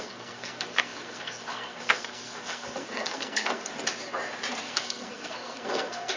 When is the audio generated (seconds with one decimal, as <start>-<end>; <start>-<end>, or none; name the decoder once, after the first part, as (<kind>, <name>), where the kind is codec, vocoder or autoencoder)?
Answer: 0.0-3.7 (codec, SNAC); 4.6-6.2